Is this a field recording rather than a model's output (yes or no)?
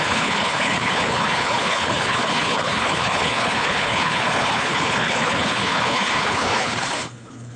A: no